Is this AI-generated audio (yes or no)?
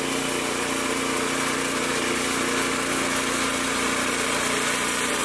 no